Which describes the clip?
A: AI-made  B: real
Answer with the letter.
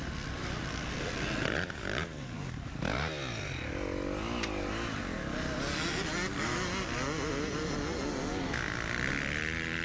B